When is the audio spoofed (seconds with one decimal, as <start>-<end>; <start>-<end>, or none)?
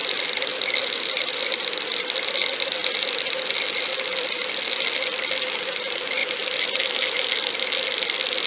0.8-1.9; 6.2-7.3